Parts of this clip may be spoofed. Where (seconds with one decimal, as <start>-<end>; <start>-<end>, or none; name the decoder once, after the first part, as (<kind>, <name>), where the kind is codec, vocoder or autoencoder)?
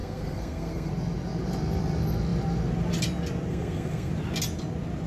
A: 0.0-0.9 (codec, SNAC); 3.5-4.1